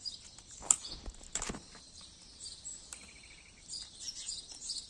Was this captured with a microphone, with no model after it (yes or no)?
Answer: no